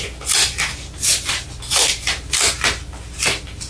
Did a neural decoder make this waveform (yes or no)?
no